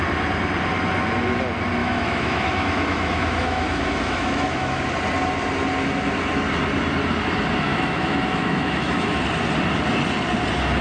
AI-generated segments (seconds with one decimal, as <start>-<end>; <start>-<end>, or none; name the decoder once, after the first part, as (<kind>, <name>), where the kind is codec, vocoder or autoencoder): 1.8-4.8 (autoencoder, DAC-VAE); 7.7-9.2